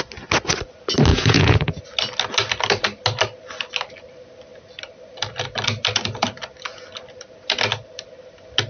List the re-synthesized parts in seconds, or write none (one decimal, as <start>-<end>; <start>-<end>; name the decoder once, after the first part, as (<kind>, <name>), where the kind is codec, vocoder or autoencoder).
1.1-1.8 (vocoder, Vocos)